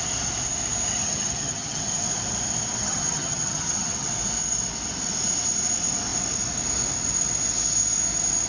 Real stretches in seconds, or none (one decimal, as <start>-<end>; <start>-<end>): 0.0-1.0; 1.9-2.8; 4.1-8.5